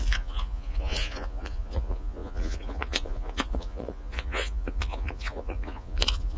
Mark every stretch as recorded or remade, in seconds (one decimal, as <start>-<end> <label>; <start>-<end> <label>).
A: 0.0-6.4 remade